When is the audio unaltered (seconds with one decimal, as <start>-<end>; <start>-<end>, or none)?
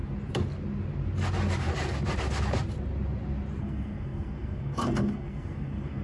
0.0-3.6